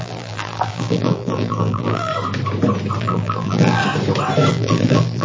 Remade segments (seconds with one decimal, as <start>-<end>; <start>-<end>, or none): 0.0-2.1; 3.0-3.8; 4.5-5.2